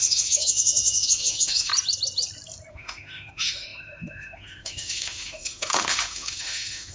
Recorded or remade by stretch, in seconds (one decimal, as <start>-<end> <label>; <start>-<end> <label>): 0.0-1.7 remade; 1.7-2.7 recorded; 2.7-6.9 remade